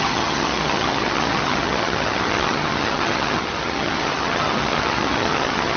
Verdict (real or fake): fake